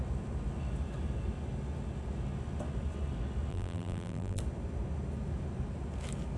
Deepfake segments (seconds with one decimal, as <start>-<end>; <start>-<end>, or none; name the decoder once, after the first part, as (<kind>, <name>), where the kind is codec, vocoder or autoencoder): 3.5-4.4 (vocoder, BigVGAN v2)